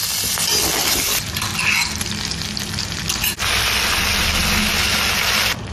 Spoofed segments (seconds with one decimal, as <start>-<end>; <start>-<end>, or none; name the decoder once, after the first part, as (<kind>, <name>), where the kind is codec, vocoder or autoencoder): none